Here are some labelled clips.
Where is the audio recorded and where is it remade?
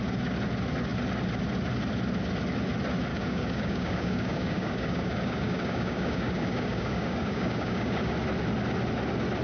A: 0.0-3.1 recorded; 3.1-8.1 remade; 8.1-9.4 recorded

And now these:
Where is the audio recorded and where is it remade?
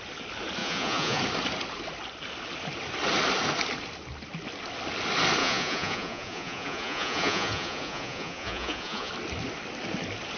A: 0.0-0.6 recorded; 0.6-1.2 remade; 1.2-5.4 recorded; 5.4-9.1 remade; 9.1-10.4 recorded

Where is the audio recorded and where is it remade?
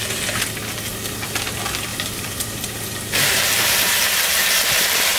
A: 0.0-1.9 recorded; 1.9-5.2 remade